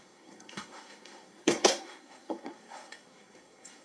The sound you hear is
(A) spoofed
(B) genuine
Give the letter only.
A